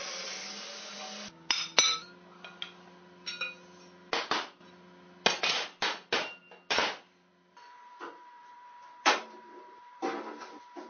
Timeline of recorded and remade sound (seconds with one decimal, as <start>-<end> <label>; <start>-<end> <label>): 0.0-6.8 recorded; 6.8-10.9 remade